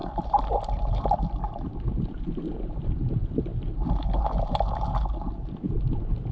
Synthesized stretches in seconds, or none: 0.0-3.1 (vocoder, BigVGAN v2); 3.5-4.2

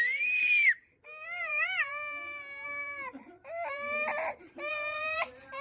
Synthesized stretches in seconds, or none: 0.0-5.6 (vocoder, BigVGAN v2)